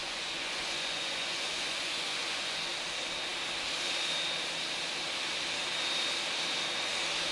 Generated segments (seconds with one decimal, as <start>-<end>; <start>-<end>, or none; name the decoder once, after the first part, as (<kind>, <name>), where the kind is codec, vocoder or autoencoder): 0.0-2.7 (vocoder, Vocos)